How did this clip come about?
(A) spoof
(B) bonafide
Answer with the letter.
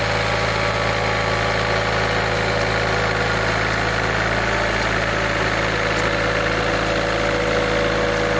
B